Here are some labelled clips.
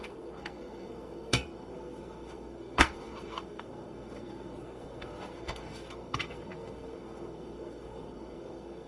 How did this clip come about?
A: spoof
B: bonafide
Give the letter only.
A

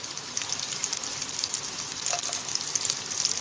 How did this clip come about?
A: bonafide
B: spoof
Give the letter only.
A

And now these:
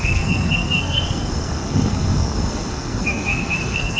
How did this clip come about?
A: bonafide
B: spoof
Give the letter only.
B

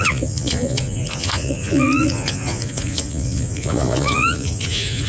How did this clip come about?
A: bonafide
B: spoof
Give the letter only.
B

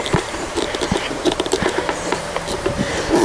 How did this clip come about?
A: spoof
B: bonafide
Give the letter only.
A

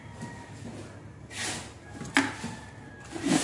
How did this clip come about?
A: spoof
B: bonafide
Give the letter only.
B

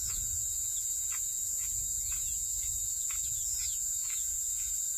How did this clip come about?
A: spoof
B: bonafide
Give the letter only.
A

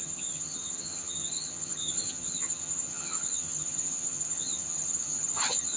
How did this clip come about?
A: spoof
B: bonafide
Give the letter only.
A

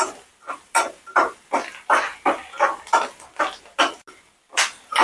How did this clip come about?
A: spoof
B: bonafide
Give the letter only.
B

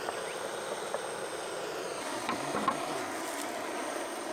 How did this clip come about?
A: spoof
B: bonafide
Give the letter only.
B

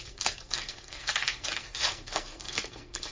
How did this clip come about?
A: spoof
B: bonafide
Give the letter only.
A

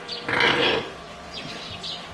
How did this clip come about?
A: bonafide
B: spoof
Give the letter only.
B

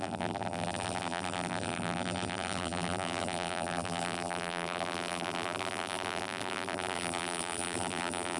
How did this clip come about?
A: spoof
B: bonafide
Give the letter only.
A